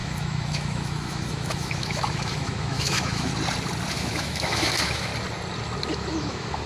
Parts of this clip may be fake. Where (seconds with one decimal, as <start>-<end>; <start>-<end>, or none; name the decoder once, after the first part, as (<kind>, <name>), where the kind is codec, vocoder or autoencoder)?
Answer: 0.0-3.3 (autoencoder, DAC-VAE); 3.9-5.1; 5.9-6.7